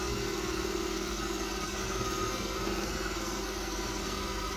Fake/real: fake